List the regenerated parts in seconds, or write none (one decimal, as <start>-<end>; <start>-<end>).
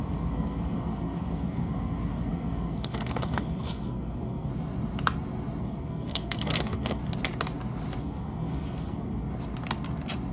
0.0-4.5; 5.6-7.0; 8.0-9.3